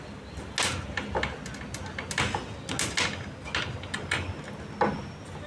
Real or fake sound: real